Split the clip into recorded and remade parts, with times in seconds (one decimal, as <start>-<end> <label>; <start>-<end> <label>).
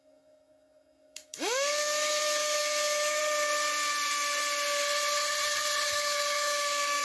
0.0-3.2 remade; 3.2-5.9 recorded; 5.9-7.0 remade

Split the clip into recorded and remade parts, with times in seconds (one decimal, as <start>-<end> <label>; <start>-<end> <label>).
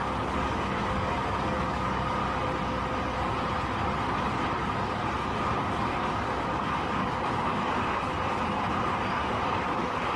0.0-2.2 remade; 2.2-4.5 recorded; 4.5-5.0 remade; 5.0-5.6 recorded; 5.6-8.1 remade; 8.1-9.0 recorded; 9.0-10.2 remade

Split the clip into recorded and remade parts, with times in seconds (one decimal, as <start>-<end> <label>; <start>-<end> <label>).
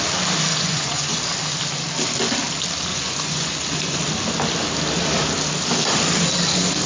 0.0-0.5 recorded; 0.5-1.2 remade; 1.2-2.9 recorded; 2.9-4.0 remade; 4.0-6.9 recorded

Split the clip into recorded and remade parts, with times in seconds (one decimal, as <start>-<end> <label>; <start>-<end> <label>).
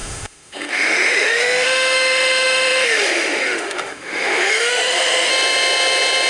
0.0-5.3 remade; 5.3-6.3 recorded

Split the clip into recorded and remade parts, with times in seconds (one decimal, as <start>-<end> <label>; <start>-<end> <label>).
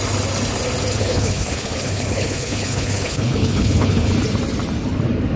0.0-1.0 recorded; 1.0-4.1 remade; 4.1-5.4 recorded